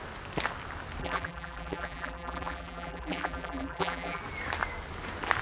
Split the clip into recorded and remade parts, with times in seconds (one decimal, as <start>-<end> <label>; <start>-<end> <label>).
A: 0.0-1.0 recorded; 1.0-4.2 remade; 4.2-5.4 recorded